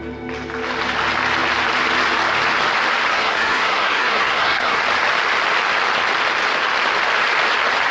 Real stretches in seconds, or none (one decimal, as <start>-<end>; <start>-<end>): 0.0-3.1; 4.8-7.9